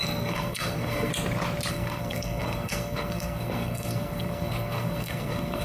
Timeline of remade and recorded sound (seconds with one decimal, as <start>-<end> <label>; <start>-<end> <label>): 0.0-1.1 remade; 1.1-1.7 recorded; 1.7-5.6 remade